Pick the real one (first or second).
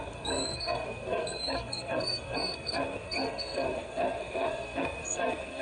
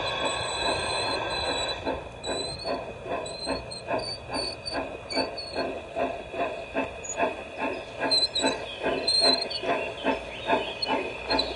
second